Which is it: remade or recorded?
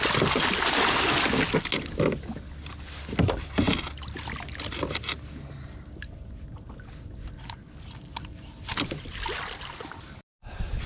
recorded